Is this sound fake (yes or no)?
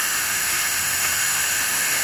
yes